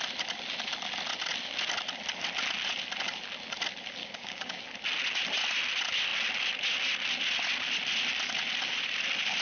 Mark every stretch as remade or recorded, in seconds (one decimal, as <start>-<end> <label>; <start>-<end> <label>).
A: 0.0-4.0 recorded; 4.0-4.6 remade; 4.6-9.4 recorded